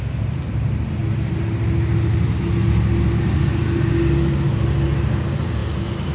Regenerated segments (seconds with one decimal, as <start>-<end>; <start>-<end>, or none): none